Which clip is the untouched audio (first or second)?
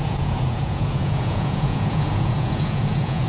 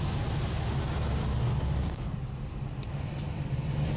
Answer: second